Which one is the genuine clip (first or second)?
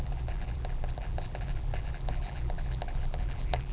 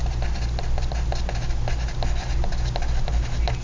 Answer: second